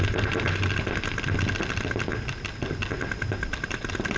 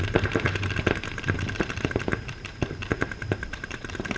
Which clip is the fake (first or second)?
second